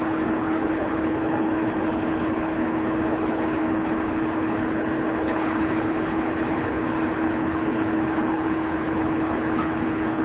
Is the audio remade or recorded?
remade